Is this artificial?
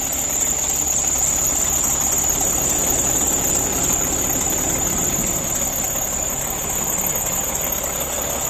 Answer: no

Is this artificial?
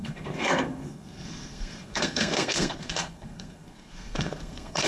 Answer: yes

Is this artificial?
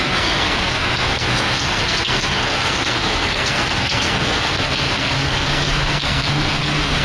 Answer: yes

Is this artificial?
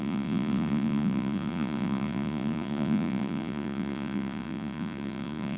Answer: yes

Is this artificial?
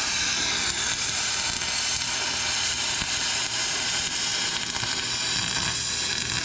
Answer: no